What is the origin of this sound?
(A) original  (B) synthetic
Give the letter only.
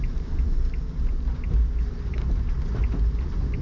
A